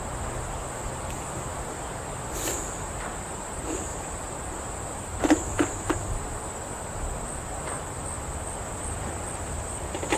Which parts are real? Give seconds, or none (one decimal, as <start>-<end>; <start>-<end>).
0.0-10.2